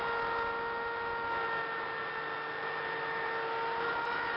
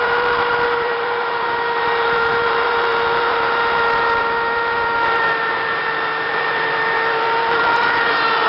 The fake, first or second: second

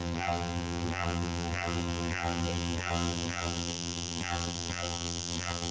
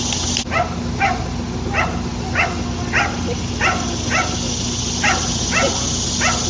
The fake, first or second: first